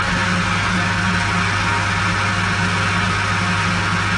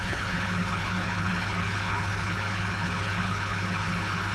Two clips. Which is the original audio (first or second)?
first